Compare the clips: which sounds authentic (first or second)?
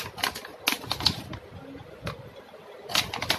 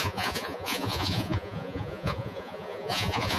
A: first